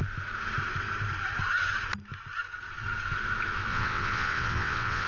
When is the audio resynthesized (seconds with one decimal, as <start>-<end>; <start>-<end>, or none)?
3.7-5.1

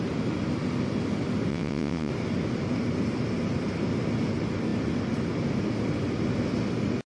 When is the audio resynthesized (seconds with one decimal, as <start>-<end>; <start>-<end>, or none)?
1.5-2.1

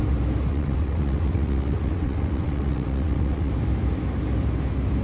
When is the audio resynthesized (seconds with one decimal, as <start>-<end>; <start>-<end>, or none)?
0.5-3.5

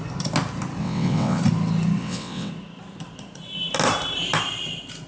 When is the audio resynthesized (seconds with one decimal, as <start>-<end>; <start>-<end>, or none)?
0.8-1.4; 2.0-2.5

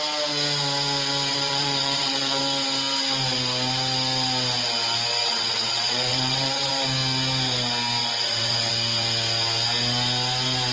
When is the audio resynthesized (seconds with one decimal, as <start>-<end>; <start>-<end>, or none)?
1.3-2.4; 5.2-6.7; 8.0-8.7